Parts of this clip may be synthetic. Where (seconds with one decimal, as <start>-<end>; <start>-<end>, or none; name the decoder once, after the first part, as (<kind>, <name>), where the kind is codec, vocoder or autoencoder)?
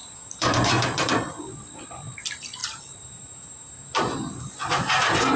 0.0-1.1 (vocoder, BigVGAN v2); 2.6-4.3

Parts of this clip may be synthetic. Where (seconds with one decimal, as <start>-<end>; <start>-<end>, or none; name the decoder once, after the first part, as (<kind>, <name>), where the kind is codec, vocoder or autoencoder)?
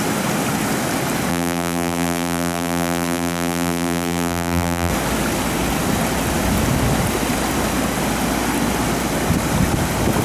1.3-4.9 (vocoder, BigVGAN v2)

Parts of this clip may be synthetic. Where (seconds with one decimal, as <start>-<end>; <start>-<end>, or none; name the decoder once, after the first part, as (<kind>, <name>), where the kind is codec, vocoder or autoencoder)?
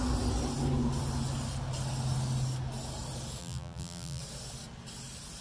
3.4-4.2 (vocoder, BigVGAN v2)